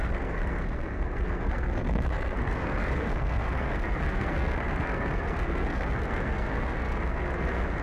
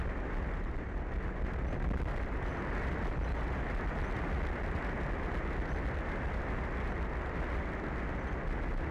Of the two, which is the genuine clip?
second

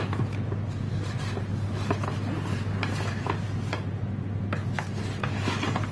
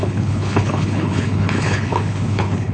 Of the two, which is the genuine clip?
first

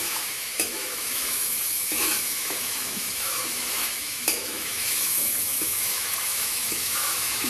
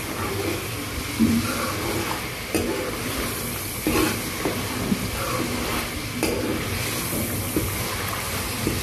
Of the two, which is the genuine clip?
second